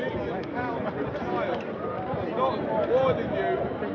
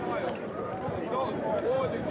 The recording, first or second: first